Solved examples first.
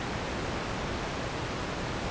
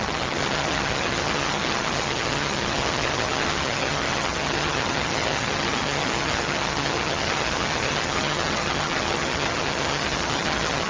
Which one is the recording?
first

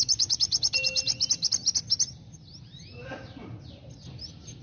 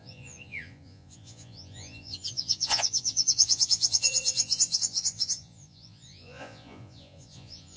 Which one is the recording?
first